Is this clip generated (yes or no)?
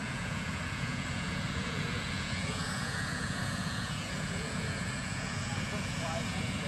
yes